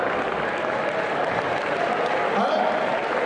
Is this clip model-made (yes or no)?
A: no